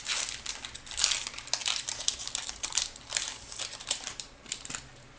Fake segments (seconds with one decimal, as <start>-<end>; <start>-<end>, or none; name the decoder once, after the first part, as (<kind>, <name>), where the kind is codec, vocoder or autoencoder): 1.6-4.7 (vocoder, BigVGAN v2)